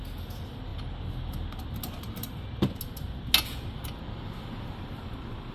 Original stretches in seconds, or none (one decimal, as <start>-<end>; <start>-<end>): 0.0-5.5

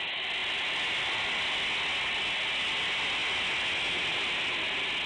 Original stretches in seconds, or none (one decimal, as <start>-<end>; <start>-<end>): 0.0-5.1